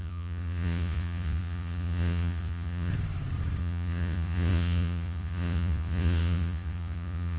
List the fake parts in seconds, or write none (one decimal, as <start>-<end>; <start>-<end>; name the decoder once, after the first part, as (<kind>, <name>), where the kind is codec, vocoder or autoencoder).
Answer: 0.0-2.9 (vocoder, Vocos); 3.6-7.4